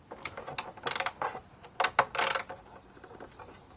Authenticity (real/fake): real